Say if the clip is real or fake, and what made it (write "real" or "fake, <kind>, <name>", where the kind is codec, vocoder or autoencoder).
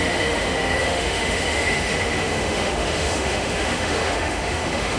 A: fake, autoencoder, DAC-VAE